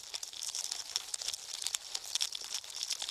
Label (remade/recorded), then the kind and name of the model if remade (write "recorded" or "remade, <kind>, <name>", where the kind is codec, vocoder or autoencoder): recorded